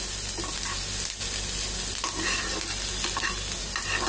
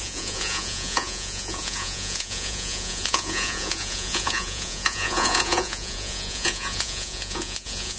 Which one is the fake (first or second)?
second